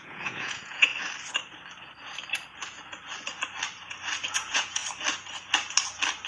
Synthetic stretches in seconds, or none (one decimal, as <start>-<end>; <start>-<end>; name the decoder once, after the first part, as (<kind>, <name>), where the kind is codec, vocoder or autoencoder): 0.0-0.9 (vocoder, Vocos); 4.3-4.8